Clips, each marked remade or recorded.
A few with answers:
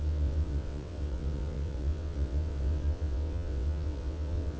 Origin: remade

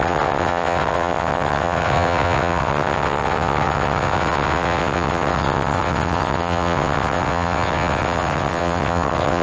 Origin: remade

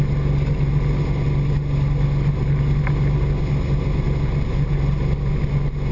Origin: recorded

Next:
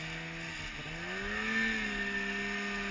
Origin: recorded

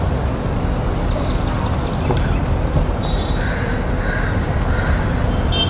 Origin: recorded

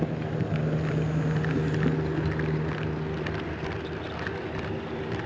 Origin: recorded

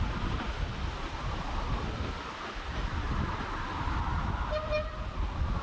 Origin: recorded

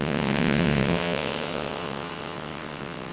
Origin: remade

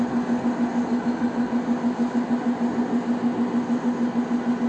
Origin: recorded